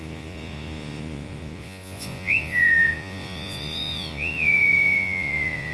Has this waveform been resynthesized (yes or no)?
yes